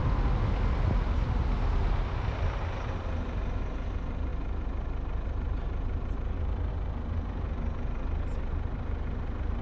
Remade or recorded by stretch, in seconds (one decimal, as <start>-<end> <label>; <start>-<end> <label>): 0.0-9.6 recorded